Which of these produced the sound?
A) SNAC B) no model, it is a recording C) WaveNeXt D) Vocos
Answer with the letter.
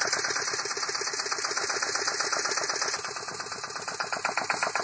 B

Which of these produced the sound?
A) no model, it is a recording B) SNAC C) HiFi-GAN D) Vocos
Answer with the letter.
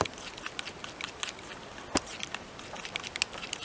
A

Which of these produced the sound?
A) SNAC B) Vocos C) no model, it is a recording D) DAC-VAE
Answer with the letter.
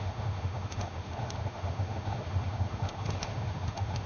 D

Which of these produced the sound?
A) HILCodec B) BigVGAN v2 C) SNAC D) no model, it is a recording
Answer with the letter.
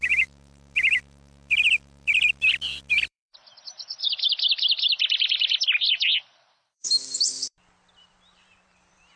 B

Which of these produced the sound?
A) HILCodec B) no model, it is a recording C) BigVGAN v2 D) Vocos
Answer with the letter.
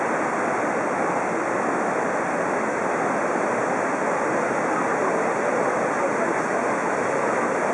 B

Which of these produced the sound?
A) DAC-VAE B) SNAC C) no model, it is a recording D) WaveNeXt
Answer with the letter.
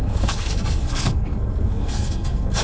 B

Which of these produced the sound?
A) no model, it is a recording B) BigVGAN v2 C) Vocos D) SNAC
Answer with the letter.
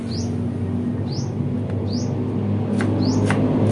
A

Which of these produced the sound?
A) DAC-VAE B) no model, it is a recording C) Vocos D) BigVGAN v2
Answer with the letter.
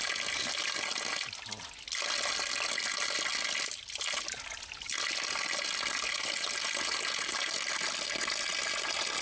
B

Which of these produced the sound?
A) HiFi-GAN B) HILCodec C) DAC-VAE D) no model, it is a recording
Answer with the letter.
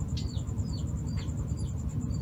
D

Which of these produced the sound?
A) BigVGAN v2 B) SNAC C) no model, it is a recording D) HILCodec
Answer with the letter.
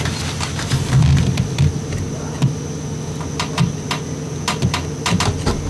C